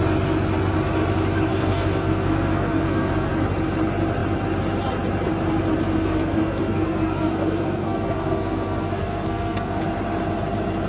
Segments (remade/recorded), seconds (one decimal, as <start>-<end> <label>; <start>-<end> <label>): 0.0-1.5 recorded; 1.5-3.3 remade; 3.3-5.9 recorded; 5.9-9.9 remade; 9.9-10.9 recorded